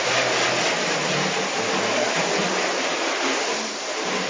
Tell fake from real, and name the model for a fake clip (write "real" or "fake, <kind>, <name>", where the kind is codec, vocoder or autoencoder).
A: real